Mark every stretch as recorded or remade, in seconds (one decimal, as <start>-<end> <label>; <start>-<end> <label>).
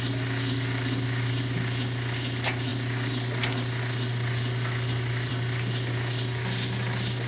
0.0-7.3 recorded